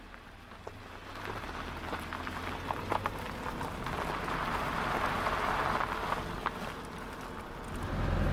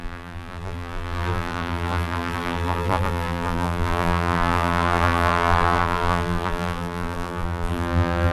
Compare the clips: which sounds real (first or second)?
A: first